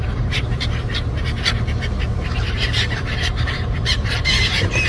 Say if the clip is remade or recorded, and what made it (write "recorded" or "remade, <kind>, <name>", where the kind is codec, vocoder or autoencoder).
remade, vocoder, BigVGAN v2